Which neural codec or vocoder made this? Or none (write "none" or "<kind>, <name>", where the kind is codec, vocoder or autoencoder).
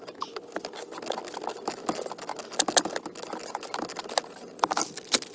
none